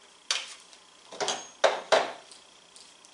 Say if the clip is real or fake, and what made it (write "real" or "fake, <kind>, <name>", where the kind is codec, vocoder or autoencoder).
real